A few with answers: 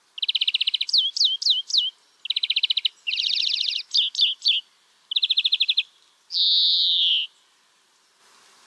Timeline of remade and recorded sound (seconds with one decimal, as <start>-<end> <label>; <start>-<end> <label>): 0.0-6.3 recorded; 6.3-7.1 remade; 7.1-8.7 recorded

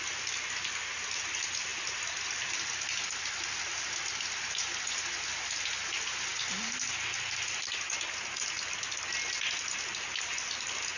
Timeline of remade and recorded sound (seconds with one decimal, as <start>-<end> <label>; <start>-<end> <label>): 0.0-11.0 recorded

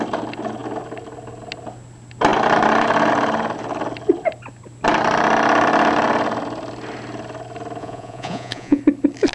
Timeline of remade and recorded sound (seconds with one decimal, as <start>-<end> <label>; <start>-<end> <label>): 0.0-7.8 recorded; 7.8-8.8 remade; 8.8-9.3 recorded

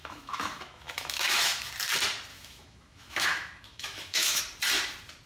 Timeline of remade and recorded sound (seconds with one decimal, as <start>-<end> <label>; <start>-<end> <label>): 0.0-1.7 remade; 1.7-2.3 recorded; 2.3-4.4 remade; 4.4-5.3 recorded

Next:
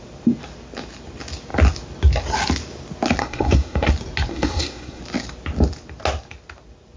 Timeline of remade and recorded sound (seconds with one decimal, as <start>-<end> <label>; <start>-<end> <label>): 0.0-3.2 recorded; 3.2-3.9 remade; 3.9-4.3 recorded; 4.3-5.0 remade; 5.0-7.0 recorded

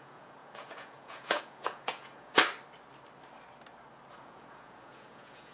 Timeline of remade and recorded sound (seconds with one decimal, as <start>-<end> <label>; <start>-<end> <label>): 0.0-2.4 remade; 2.4-4.1 recorded; 4.1-5.5 remade